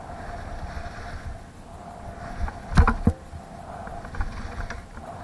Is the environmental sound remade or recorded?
recorded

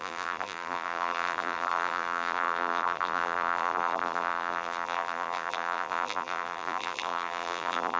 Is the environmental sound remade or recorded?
remade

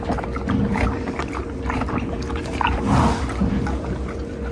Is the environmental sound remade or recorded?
recorded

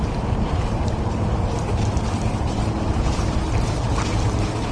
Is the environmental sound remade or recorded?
remade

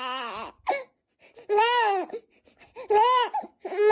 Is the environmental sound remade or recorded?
recorded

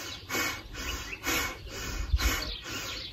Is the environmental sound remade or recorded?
recorded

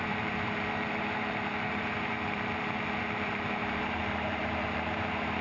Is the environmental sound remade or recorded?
remade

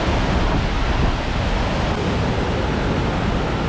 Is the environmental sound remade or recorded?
recorded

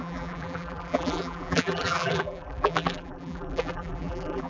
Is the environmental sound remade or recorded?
remade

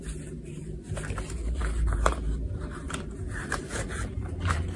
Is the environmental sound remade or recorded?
remade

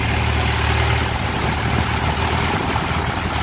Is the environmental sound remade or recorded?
recorded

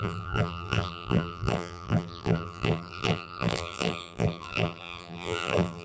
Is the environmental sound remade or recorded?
remade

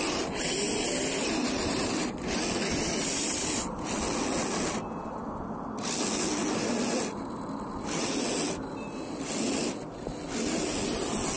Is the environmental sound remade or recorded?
recorded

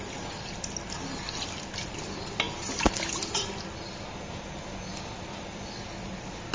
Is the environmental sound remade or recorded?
recorded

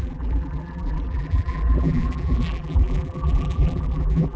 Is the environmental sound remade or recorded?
remade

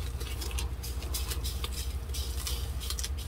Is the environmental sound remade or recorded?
recorded